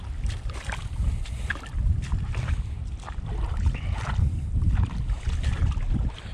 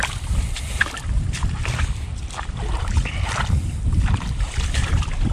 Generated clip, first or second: second